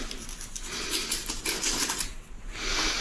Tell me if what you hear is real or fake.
real